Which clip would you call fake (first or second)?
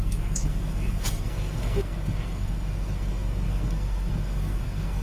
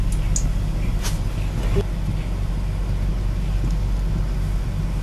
first